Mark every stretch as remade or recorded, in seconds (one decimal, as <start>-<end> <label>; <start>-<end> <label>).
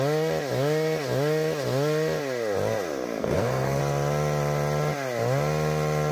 0.0-3.2 recorded; 3.2-3.8 remade; 3.8-6.1 recorded